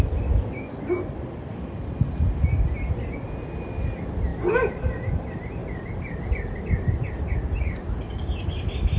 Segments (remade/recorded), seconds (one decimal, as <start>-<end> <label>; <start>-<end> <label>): 0.0-9.0 recorded